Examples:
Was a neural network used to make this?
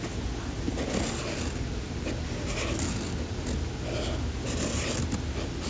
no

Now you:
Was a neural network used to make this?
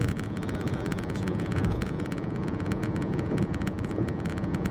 yes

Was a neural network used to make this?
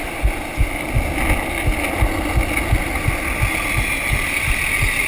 no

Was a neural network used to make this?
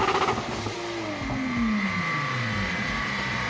no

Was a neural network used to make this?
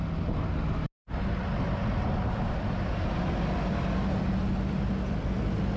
no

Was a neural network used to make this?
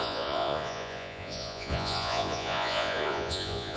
yes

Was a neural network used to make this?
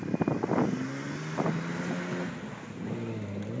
no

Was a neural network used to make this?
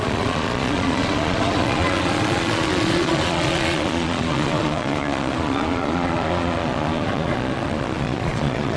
yes